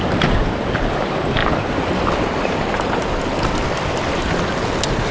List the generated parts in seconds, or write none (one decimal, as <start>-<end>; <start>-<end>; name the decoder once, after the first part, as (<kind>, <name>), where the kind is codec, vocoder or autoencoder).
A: none